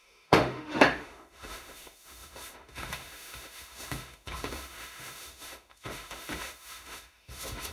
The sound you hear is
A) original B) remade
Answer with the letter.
B